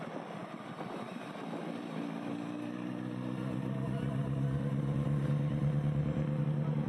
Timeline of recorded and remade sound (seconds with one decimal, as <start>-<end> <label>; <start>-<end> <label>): 0.0-0.4 recorded; 0.4-1.3 remade; 1.3-6.9 recorded